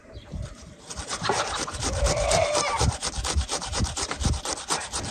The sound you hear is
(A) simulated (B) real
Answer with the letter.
A